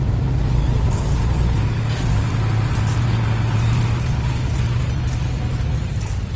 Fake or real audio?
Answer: real